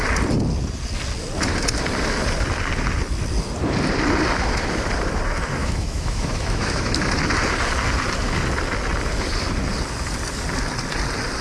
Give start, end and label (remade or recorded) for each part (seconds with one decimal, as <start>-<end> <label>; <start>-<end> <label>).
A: 0.0-5.6 recorded; 5.6-7.1 remade; 7.1-11.4 recorded